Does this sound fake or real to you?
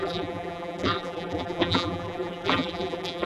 fake